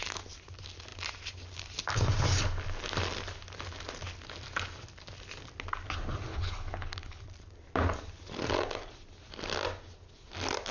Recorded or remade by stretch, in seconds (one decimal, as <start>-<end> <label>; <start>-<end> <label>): 0.0-6.3 recorded; 6.3-7.2 remade; 7.2-10.7 recorded